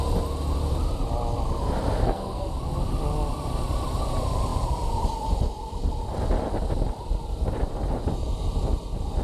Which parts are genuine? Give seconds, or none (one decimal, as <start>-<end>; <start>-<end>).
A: 0.0-2.0; 2.5-9.2